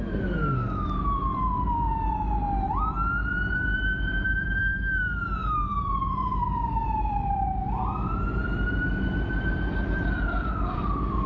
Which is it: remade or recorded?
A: remade